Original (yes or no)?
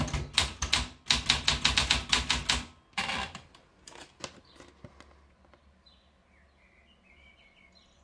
yes